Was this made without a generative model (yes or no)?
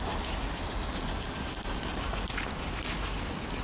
yes